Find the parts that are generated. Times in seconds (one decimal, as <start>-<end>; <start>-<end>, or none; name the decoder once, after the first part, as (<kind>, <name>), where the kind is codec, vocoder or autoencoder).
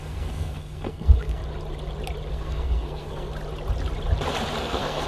0.0-1.4 (codec, SNAC); 2.3-3.3; 4.6-5.1